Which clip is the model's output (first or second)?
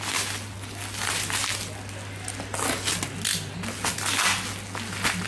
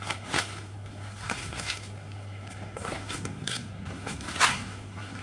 second